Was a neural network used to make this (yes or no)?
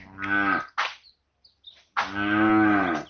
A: no